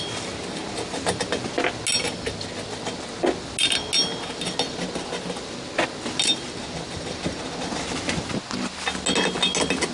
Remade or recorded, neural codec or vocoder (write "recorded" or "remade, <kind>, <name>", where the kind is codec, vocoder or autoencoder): recorded